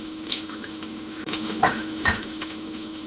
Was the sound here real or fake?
fake